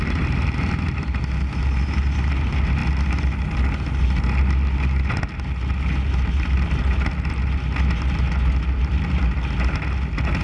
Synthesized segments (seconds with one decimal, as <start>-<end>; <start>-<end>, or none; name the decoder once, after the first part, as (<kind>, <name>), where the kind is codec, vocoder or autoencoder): none